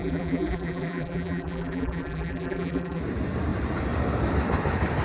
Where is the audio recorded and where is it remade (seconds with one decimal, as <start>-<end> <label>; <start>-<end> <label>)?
0.0-3.0 remade; 3.0-5.0 recorded